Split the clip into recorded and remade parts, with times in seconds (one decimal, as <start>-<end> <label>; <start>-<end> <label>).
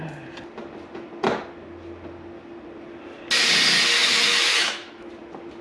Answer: 0.0-4.0 recorded; 4.0-5.1 remade; 5.1-5.6 recorded